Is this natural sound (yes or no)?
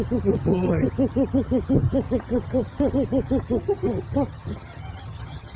no